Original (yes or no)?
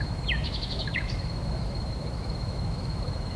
no